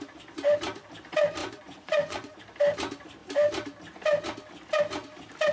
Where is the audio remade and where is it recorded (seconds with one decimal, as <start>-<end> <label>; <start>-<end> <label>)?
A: 0.0-1.4 recorded; 1.4-2.4 remade; 2.4-5.5 recorded